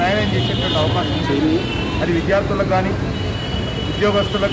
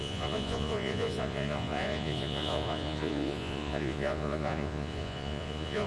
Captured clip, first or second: first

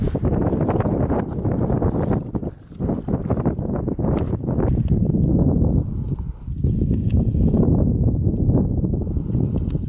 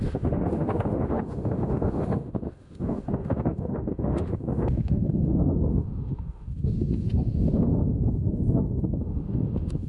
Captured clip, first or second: first